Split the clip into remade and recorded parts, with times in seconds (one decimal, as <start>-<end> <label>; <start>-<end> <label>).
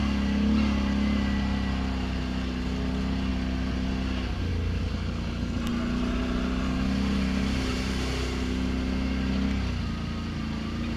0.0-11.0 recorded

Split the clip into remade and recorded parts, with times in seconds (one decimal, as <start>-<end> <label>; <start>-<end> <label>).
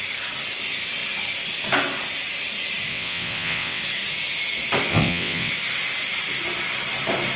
0.0-2.9 recorded; 2.9-3.8 remade; 3.8-4.9 recorded; 4.9-5.5 remade; 5.5-7.4 recorded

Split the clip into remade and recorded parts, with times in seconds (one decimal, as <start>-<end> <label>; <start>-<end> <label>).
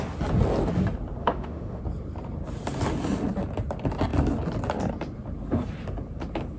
0.0-1.2 recorded; 1.2-1.8 remade; 1.8-6.6 recorded